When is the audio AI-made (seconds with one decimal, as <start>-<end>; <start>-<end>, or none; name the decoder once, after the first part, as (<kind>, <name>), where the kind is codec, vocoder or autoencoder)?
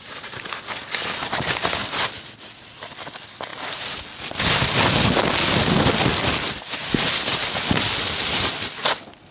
none